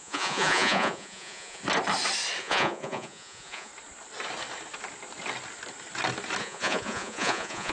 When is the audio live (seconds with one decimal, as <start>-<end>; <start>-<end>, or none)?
1.6-2.4; 3.7-6.4